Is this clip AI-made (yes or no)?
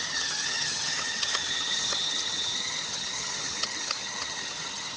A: yes